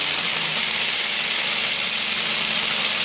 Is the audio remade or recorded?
recorded